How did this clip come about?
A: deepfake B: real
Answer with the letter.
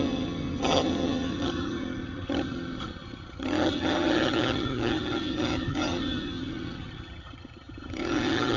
A